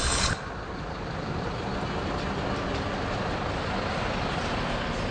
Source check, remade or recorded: recorded